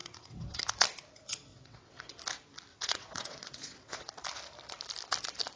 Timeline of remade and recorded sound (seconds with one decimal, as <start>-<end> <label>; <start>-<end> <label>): 0.0-0.6 remade; 0.6-1.5 recorded; 1.5-2.2 remade; 2.2-2.7 recorded; 2.7-4.1 remade; 4.1-5.6 recorded